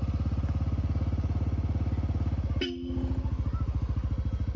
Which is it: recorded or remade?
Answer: recorded